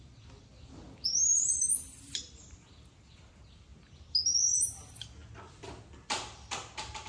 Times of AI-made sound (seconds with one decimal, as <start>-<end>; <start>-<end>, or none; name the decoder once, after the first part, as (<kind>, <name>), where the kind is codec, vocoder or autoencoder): 1.3-3.3 (vocoder, BigVGAN v2)